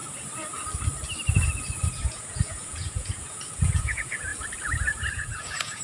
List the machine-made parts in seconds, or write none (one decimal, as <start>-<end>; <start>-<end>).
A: 1.9-4.3; 5.1-5.8